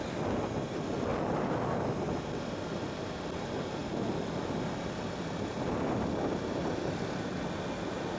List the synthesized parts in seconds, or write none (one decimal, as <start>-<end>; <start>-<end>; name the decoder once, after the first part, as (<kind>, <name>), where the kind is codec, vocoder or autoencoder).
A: none